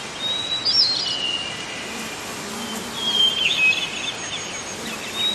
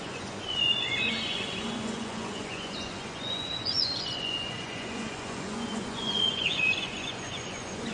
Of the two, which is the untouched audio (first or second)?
first